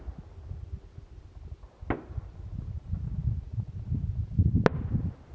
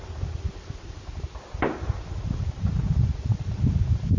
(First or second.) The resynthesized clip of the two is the second